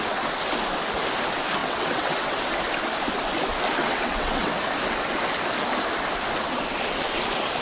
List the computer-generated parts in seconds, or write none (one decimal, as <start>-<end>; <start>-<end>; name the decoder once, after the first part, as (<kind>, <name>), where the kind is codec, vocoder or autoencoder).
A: 1.6-2.4 (vocoder, WaveNeXt); 3.8-4.5